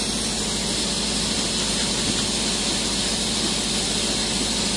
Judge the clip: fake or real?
real